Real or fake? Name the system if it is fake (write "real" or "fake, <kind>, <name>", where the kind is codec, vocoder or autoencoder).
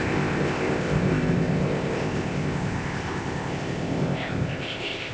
fake, codec, ZipCodec